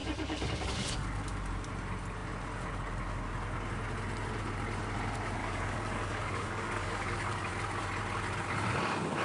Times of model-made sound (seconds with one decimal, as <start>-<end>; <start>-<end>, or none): 0.0-1.5; 5.4-7.5